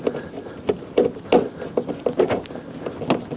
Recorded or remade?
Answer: recorded